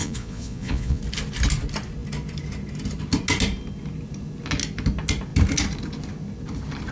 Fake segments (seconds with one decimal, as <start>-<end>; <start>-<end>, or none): 0.0-1.0